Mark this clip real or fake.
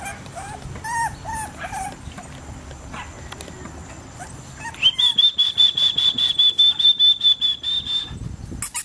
real